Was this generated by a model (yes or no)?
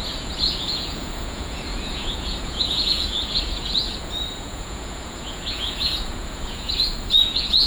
yes